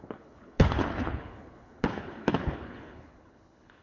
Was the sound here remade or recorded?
remade